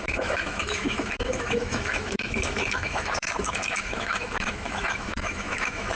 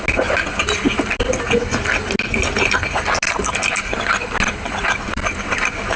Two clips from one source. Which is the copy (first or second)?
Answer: first